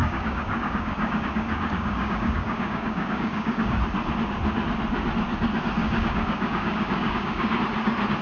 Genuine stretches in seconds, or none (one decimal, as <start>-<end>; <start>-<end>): 3.8-5.8; 7.6-8.2